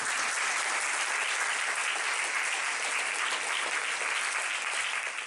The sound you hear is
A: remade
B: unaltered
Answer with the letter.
B